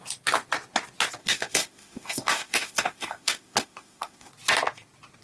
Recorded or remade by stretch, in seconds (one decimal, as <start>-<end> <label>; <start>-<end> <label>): 0.0-1.2 recorded; 1.2-4.3 remade; 4.3-5.2 recorded